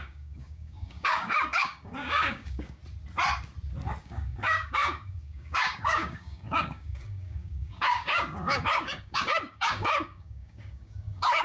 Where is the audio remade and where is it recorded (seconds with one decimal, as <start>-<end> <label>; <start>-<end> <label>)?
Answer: 0.0-2.8 remade; 2.8-4.0 recorded; 4.0-11.4 remade